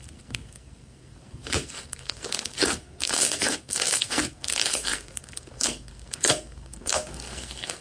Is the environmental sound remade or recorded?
remade